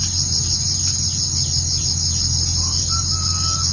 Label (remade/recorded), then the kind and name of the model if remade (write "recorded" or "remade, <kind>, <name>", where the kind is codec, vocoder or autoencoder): recorded